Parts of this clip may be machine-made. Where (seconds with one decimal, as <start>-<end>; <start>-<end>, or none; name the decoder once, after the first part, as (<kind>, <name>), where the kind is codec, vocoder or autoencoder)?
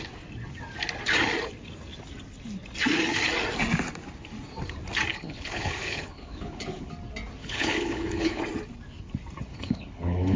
5.1-6.9 (codec, HILCodec); 7.4-8.4; 9.5-10.4